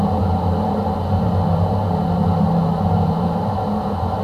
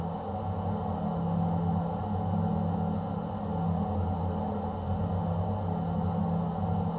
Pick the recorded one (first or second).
second